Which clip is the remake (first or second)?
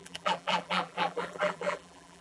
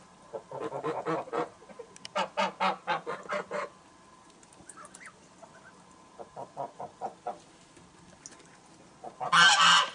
first